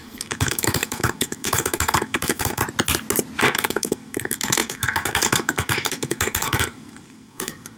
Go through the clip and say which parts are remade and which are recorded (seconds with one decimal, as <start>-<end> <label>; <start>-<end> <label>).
0.0-2.6 remade; 2.6-3.4 recorded; 3.4-7.8 remade